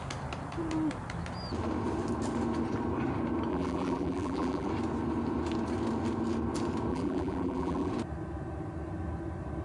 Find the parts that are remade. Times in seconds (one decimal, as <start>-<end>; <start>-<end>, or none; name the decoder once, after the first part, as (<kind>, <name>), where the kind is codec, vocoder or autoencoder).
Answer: 3.5-4.7 (vocoder, BigVGAN v2); 6.9-7.9